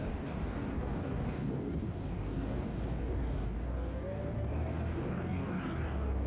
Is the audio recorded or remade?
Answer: remade